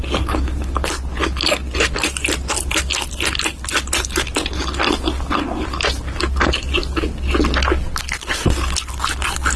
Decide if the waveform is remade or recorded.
recorded